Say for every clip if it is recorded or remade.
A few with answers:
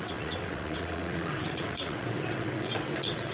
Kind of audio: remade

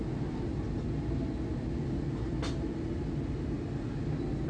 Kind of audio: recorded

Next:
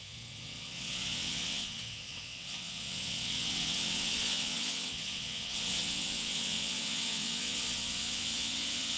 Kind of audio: remade